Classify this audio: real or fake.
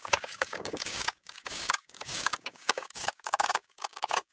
fake